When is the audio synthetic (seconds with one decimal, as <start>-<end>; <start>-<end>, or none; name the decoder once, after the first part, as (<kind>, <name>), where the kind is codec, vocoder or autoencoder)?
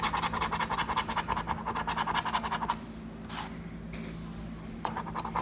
none